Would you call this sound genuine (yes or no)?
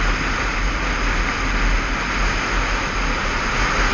yes